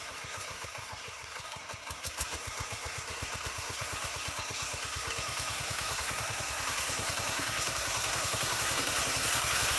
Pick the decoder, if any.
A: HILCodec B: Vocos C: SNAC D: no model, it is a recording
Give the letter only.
C